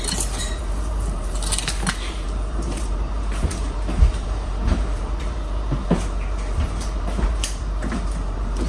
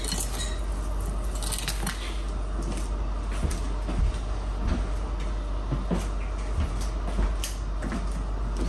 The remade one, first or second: first